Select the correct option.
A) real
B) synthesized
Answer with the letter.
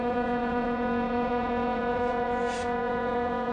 B